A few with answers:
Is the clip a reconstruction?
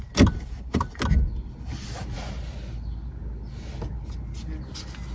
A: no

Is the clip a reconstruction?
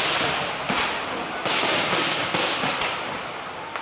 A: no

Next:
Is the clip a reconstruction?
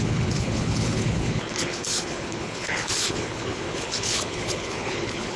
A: yes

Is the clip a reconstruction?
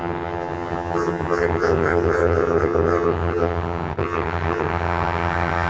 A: yes